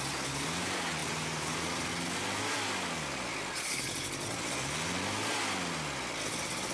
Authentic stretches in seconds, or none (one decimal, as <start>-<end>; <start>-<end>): 0.0-1.0; 1.9-6.7

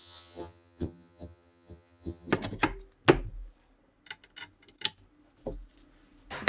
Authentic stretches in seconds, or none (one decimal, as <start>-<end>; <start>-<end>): 2.3-6.5